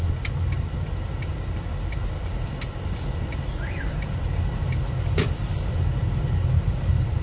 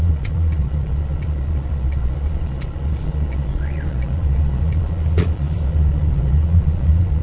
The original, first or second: first